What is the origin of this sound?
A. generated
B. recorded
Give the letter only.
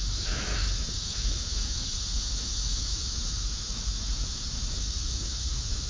A